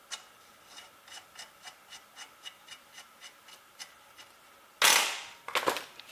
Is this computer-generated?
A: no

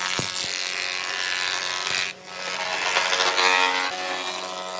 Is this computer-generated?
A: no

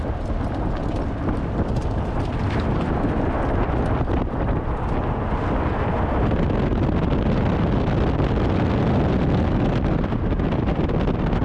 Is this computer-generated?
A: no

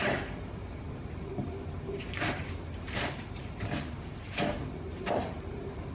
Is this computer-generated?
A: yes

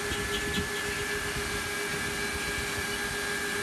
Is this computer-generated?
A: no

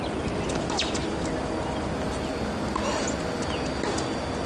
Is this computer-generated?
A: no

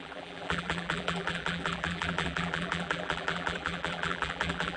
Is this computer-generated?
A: yes